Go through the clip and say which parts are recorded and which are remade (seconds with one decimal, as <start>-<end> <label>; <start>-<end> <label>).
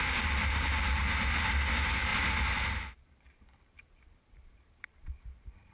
0.0-1.0 remade; 1.0-1.7 recorded; 1.7-2.1 remade; 2.1-2.8 recorded; 2.8-5.7 remade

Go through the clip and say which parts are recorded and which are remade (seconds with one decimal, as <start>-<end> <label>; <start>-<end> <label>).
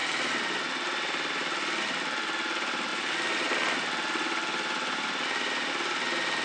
0.0-1.9 recorded; 1.9-6.4 remade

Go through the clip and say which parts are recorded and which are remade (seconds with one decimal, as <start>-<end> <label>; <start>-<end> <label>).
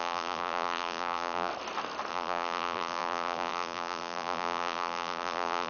0.0-1.5 remade; 1.5-2.1 recorded; 2.1-5.7 remade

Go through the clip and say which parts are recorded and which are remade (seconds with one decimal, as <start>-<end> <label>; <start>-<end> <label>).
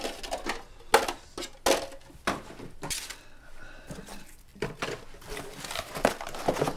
0.0-4.5 recorded; 4.5-5.4 remade; 5.4-6.8 recorded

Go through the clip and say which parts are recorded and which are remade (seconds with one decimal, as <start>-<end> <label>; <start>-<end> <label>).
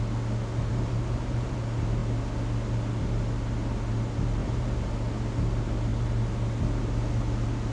0.0-0.7 recorded; 0.7-1.6 remade; 1.6-4.4 recorded; 4.4-4.9 remade; 4.9-7.7 recorded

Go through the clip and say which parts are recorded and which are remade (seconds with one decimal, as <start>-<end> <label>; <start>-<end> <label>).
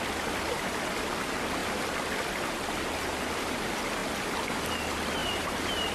0.0-5.2 recorded; 5.2-5.9 remade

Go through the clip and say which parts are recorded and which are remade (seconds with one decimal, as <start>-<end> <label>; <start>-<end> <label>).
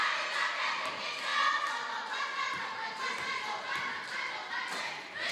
0.0-5.3 remade